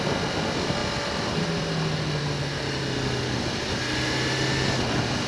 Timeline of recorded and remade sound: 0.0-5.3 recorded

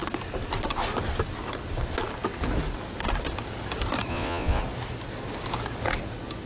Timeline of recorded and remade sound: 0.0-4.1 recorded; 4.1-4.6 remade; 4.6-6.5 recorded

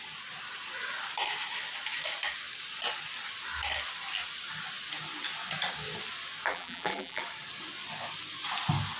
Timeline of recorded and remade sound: 0.0-6.5 recorded; 6.5-7.2 remade; 7.2-9.0 recorded

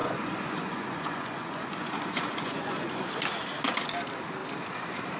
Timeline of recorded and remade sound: 0.0-3.1 remade; 3.1-5.2 recorded